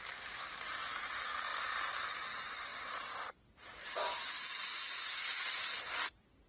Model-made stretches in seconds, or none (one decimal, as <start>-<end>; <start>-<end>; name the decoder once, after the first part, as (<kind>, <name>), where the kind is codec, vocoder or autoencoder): none